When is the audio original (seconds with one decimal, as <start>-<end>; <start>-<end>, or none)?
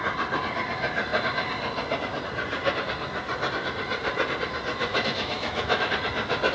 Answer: 0.0-4.9; 5.9-6.5